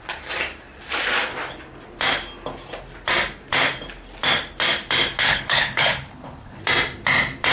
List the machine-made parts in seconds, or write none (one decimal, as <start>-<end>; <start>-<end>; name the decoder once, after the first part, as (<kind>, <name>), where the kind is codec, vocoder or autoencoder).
5.2-6.6 (codec, HILCodec)